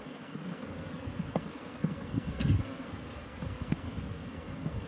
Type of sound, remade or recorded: remade